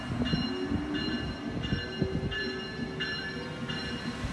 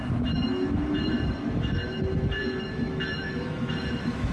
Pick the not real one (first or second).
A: second